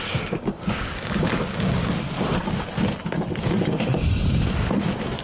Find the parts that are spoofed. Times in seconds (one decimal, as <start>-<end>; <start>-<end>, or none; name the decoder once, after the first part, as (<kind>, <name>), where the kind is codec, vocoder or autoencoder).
0.4-1.9 (codec, DAC)